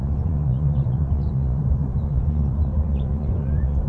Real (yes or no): no